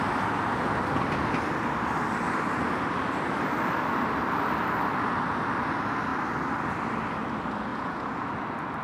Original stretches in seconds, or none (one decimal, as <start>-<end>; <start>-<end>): 0.0-7.7; 8.2-8.8